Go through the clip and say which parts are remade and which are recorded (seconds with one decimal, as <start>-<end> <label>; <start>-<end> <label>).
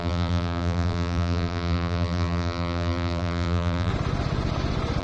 0.0-3.9 remade; 3.9-5.0 recorded